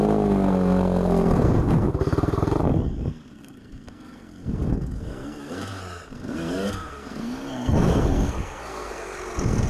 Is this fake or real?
fake